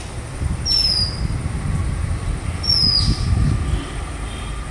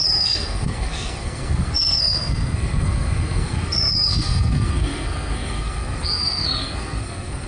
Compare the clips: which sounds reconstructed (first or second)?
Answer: second